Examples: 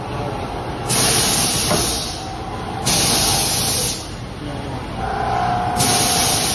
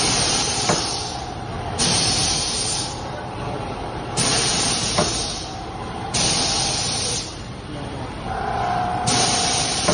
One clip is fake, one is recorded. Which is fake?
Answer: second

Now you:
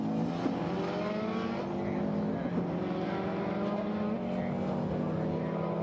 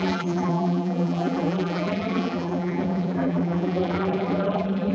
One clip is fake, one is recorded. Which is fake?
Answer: second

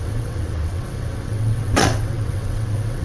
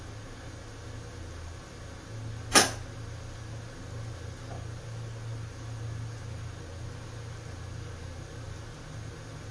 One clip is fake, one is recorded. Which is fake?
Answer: first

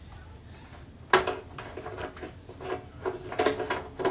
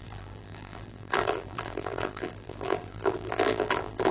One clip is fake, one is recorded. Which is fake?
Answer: second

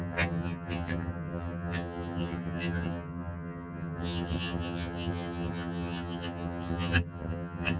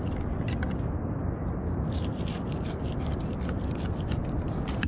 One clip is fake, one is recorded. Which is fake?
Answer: first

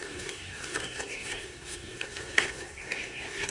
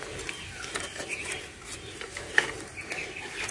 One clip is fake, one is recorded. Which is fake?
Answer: first